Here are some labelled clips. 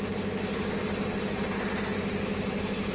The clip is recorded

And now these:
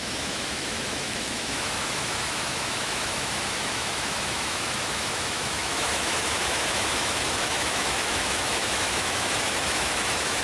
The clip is remade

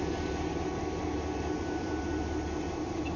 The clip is recorded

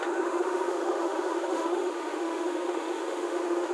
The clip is remade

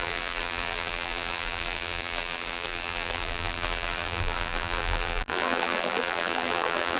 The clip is remade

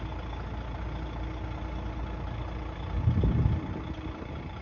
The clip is recorded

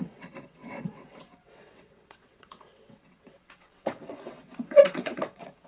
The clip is remade